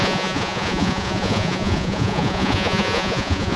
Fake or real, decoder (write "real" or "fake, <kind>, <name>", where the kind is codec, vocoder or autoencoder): fake, vocoder, Vocos